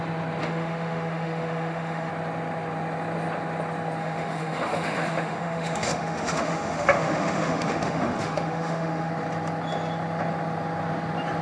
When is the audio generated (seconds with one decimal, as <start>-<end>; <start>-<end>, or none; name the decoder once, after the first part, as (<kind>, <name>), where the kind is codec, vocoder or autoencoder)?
0.4-2.1 (autoencoder, DAC-VAE); 4.0-9.1